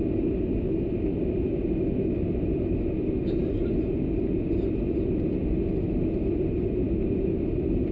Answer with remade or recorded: recorded